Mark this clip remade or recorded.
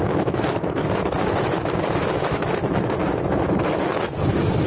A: remade